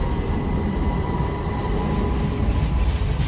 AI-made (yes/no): no